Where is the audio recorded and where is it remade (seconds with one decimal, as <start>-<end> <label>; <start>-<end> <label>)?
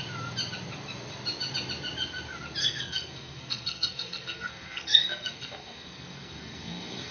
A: 0.0-2.6 recorded; 2.6-7.1 remade